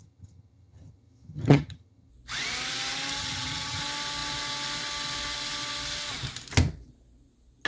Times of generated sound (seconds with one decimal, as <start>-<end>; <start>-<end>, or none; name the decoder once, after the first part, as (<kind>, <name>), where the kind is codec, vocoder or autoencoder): 0.0-2.1 (vocoder, HiFi-GAN); 3.2-3.8